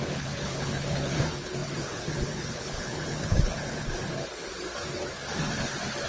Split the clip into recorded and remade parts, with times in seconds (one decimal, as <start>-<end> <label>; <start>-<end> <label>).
0.0-4.5 remade; 4.5-6.1 recorded